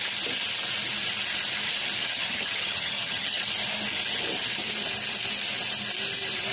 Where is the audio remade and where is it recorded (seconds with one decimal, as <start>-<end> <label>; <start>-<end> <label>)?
0.0-2.0 recorded; 2.0-3.4 remade; 3.4-6.5 recorded